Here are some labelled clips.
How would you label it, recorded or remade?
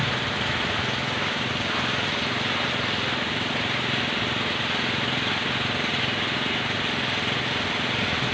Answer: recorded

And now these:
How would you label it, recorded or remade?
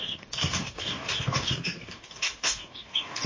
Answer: remade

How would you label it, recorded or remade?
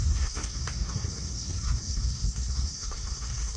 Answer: remade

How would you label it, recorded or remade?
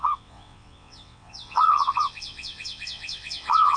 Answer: remade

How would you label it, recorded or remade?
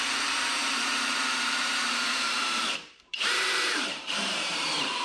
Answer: remade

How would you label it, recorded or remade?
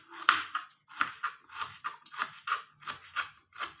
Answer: recorded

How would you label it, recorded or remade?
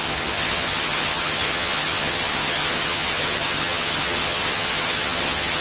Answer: remade